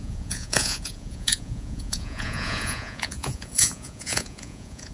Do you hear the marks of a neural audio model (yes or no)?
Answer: yes